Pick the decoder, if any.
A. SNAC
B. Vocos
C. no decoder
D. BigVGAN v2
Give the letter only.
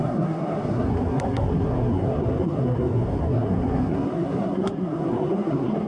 A